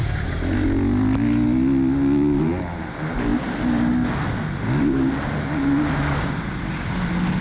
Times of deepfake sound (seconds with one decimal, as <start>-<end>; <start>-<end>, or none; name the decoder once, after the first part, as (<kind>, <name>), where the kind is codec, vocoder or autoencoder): none